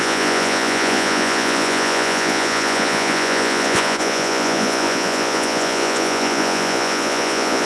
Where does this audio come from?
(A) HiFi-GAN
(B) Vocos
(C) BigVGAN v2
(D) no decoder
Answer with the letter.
B